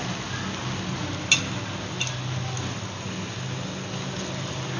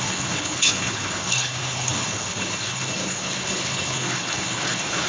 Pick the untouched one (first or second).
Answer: first